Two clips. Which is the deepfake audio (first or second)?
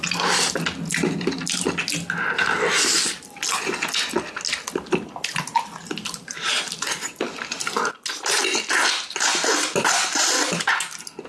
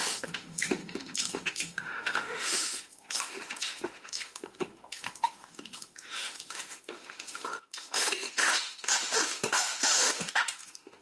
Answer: second